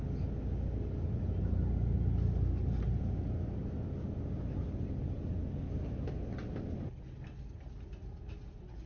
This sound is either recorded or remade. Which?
recorded